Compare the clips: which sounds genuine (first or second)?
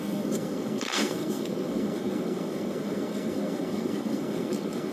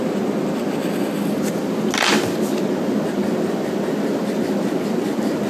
second